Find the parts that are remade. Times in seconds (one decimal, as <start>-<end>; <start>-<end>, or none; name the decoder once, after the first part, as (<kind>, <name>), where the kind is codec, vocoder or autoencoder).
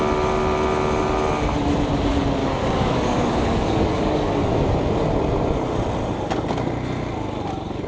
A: 2.4-4.5 (codec, DAC)